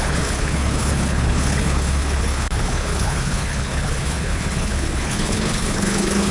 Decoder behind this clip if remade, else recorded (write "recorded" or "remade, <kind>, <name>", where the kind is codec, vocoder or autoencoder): remade, codec, HILCodec